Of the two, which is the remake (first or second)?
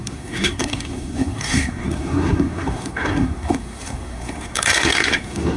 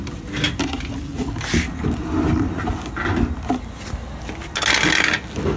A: first